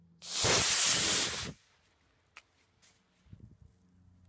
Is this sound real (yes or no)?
yes